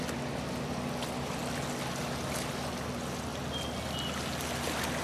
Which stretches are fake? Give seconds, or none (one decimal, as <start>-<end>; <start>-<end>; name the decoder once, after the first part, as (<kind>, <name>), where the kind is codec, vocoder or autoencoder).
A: none